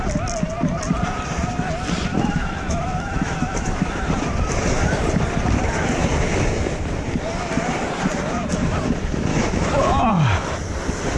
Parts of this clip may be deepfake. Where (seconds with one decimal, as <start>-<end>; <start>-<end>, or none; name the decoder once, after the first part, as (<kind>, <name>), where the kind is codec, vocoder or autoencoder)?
2.1-4.1 (autoencoder, DAC-VAE); 9.3-10.1